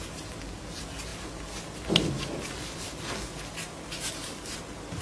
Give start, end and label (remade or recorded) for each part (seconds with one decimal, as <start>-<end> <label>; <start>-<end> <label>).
0.0-5.0 recorded